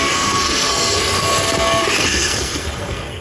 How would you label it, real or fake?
fake